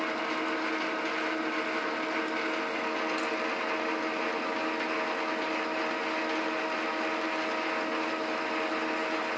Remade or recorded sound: recorded